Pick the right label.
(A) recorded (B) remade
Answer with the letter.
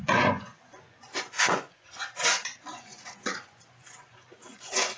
B